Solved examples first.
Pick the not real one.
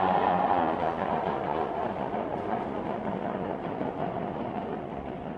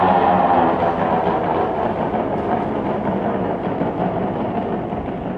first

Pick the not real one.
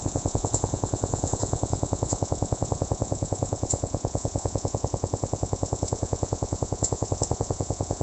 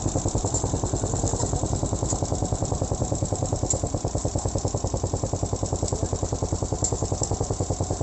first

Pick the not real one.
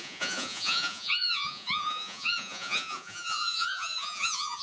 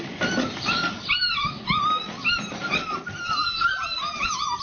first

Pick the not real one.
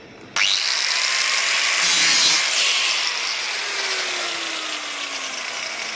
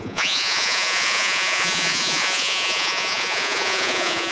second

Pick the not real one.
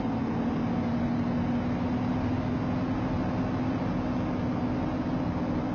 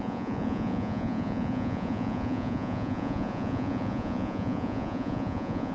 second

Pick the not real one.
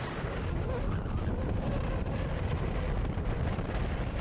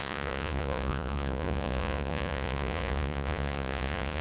second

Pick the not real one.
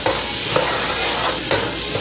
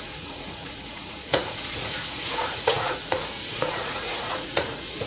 second